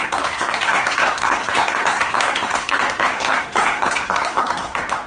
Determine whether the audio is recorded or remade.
remade